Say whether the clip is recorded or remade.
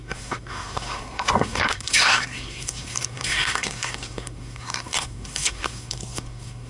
remade